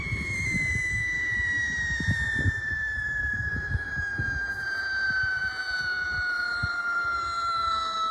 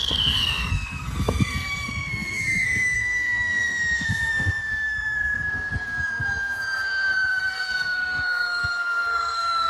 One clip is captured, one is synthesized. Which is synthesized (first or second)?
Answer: second